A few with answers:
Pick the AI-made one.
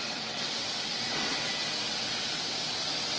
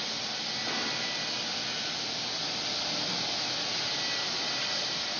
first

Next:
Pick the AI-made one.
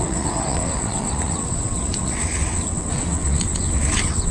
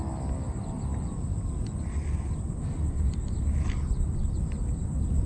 first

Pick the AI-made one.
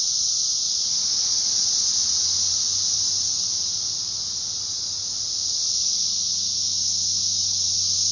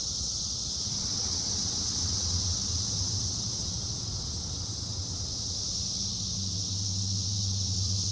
second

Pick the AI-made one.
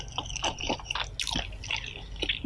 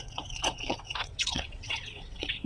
second